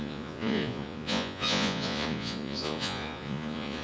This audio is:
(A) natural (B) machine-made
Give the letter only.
B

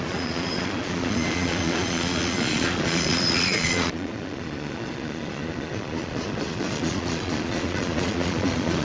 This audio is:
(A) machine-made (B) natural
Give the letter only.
A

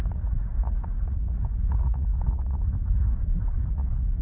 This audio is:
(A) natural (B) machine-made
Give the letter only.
B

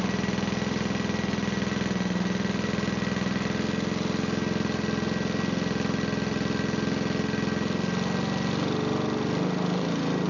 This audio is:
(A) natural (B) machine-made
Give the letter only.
A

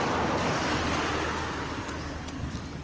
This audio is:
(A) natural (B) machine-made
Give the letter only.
A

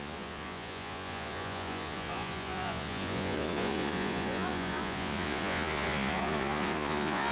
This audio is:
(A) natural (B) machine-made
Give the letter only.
B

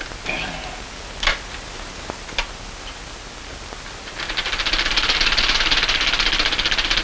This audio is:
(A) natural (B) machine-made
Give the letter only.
A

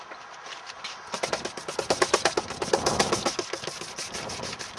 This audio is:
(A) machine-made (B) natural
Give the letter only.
B